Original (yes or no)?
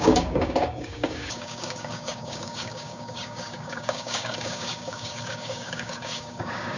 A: no